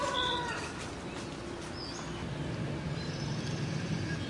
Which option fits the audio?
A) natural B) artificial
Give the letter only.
A